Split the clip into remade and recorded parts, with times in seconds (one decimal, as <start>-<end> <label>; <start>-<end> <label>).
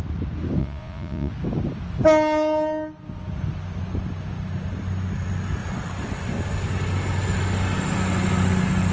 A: 0.0-0.6 recorded; 0.6-1.3 remade; 1.3-8.9 recorded